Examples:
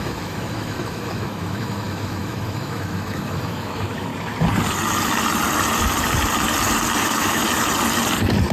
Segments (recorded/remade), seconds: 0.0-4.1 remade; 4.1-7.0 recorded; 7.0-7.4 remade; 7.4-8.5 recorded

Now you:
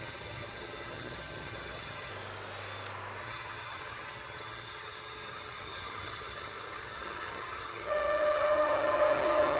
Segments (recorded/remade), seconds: 0.0-2.1 remade; 2.1-3.2 recorded; 3.2-9.6 remade

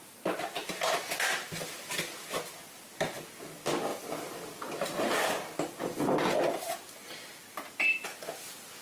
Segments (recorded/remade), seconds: 0.0-3.9 recorded; 3.9-5.1 remade; 5.1-8.8 recorded

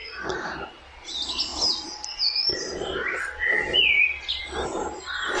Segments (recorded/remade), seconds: 0.0-5.4 recorded

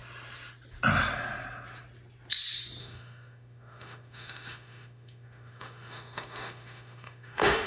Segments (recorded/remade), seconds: 0.0-2.8 recorded; 2.8-7.7 remade

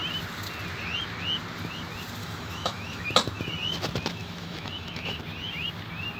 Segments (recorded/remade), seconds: 0.0-2.2 recorded; 2.2-3.1 remade; 3.1-4.2 recorded; 4.2-5.2 remade; 5.2-6.2 recorded

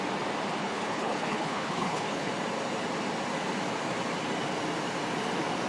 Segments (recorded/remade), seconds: 0.0-0.6 recorded; 0.6-2.3 remade; 2.3-5.7 recorded

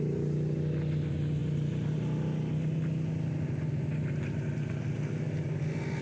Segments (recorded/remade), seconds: 0.0-6.0 recorded